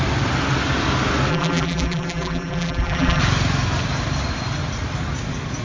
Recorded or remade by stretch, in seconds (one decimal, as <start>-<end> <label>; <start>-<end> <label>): 0.0-1.3 recorded; 1.3-3.2 remade; 3.2-5.6 recorded